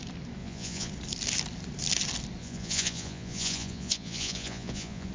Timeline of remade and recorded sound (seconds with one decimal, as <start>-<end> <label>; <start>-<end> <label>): 0.0-0.4 recorded; 0.4-0.9 remade; 0.9-2.4 recorded; 2.4-5.1 remade